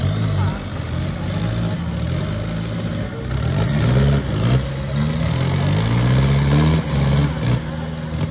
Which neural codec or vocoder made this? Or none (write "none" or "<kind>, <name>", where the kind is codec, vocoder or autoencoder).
none